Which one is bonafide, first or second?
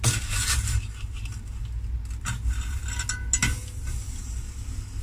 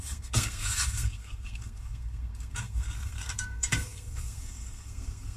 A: first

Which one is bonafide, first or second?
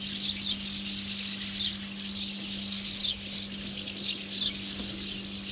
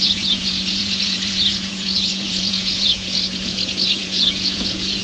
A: first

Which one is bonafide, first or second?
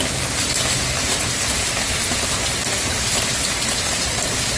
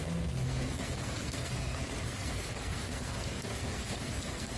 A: first